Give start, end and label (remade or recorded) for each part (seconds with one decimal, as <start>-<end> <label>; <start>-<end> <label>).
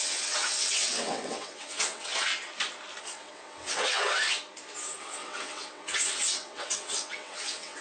0.0-2.3 remade; 2.3-3.0 recorded; 3.0-4.4 remade; 4.4-5.0 recorded; 5.0-7.8 remade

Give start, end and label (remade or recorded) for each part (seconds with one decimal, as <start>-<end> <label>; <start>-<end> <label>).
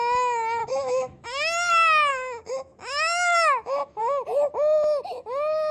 0.0-0.6 recorded; 0.6-1.7 remade; 1.7-2.1 recorded; 2.1-4.0 remade; 4.0-5.7 recorded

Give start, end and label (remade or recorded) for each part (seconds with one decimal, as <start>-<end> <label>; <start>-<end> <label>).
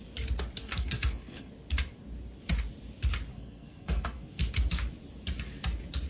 0.0-0.6 recorded; 0.6-1.5 remade; 1.5-3.3 recorded; 3.3-4.4 remade; 4.4-6.1 recorded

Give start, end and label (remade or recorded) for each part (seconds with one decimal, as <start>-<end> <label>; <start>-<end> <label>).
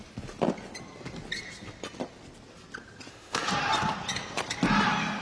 0.0-3.1 recorded; 3.1-3.5 remade; 3.5-5.2 recorded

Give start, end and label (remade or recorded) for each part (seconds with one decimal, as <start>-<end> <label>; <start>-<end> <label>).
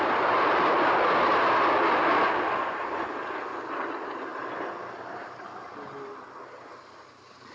0.0-7.5 recorded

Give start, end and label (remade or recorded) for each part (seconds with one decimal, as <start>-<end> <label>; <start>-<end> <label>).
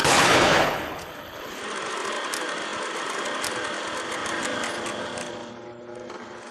0.0-1.6 remade; 1.6-6.5 recorded